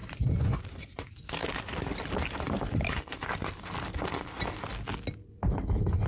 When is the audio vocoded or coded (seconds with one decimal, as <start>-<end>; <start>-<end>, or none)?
0.0-0.6